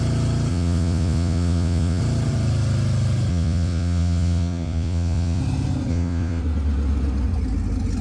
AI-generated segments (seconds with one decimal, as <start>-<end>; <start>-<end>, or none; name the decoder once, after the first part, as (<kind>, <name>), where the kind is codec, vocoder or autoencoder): 0.5-2.0 (vocoder, Vocos); 3.3-5.4; 5.9-6.4